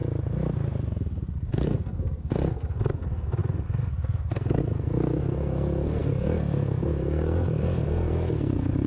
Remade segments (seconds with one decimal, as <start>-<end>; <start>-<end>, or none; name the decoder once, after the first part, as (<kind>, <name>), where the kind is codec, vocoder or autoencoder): 1.5-8.9 (codec, SNAC)